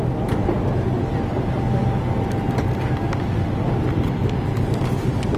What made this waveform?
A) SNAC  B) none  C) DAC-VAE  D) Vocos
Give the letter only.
B